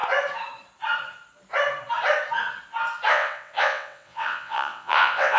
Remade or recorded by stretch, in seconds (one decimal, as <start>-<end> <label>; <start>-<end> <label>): 0.0-3.1 recorded; 3.1-5.4 remade